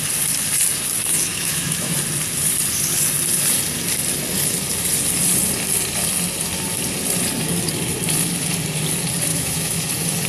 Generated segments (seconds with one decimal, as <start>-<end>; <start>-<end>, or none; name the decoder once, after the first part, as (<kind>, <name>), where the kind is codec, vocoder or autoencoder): 1.3-1.9 (autoencoder, DAC-VAE); 9.3-9.9